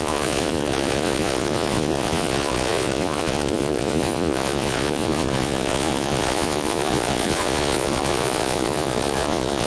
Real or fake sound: fake